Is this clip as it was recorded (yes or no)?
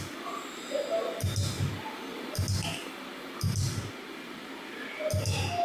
yes